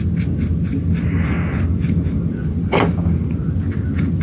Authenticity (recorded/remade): recorded